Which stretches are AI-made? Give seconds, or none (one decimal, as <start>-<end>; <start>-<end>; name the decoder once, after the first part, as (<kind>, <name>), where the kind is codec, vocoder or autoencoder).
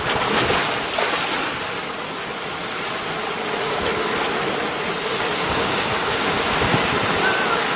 5.1-6.6 (codec, DAC)